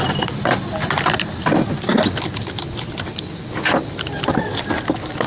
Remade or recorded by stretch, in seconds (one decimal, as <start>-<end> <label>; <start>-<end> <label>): 0.0-5.3 recorded